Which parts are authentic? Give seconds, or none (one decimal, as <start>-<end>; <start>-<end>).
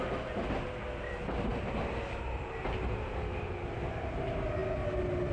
0.0-5.3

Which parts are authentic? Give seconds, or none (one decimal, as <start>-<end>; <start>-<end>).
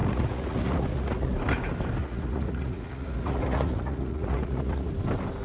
1.3-2.0; 4.9-5.4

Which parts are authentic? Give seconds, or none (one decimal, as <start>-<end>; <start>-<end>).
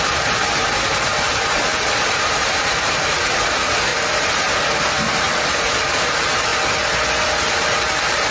3.9-5.1; 6.5-7.5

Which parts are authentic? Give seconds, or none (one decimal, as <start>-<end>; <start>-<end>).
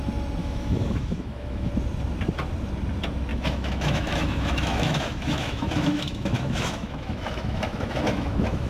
0.0-0.4; 1.7-3.3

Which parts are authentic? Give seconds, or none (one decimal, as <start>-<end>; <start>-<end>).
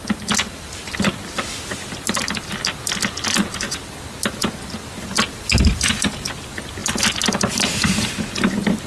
0.0-8.9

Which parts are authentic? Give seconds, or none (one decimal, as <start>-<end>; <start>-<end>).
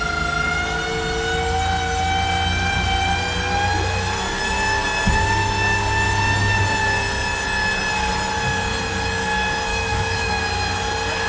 0.0-9.7; 10.4-11.3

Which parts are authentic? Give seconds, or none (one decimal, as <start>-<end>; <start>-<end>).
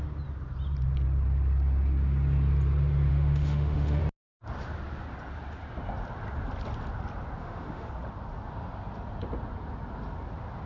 0.0-3.1; 4.0-7.4; 7.9-10.7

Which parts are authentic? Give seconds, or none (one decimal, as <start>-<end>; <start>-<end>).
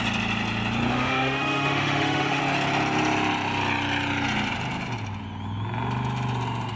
0.0-0.9; 2.4-6.8